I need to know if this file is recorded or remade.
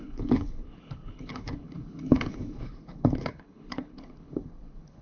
remade